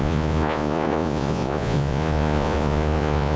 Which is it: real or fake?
fake